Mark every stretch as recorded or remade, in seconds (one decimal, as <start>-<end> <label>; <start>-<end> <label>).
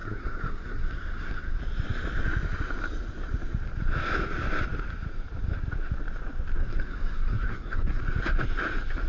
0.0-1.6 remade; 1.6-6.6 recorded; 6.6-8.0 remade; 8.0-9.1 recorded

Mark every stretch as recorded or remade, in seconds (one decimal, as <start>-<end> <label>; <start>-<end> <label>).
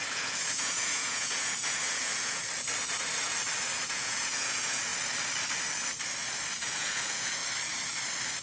0.0-2.4 remade; 2.4-3.9 recorded; 3.9-4.9 remade; 4.9-6.6 recorded; 6.6-7.4 remade; 7.4-8.4 recorded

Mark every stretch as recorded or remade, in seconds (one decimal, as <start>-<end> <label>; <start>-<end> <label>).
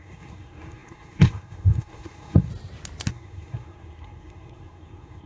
0.0-2.5 remade; 2.5-3.1 recorded; 3.1-5.3 remade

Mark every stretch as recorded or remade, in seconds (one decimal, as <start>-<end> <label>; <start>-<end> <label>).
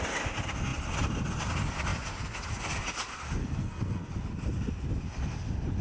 0.0-3.4 recorded; 3.4-4.1 remade; 4.1-5.8 recorded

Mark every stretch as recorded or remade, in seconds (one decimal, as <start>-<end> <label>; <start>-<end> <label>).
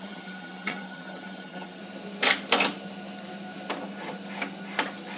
0.0-1.8 remade; 1.8-5.2 recorded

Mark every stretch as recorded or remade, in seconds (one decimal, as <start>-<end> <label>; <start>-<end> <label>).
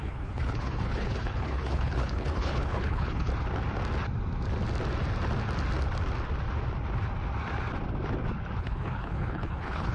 0.0-3.3 remade; 3.3-8.6 recorded; 8.6-9.9 remade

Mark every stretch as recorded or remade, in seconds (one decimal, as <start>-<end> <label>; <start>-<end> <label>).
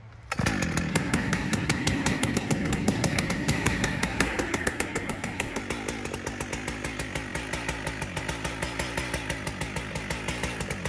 0.0-0.9 recorded; 0.9-5.6 remade; 5.6-10.9 recorded